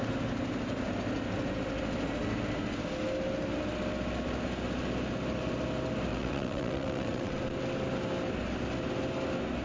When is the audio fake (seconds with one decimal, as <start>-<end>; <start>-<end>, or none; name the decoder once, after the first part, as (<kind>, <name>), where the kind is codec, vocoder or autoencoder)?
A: 6.1-7.4 (vocoder, WaveNeXt)